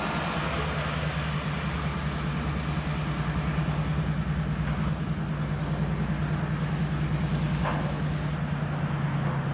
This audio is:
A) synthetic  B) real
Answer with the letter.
B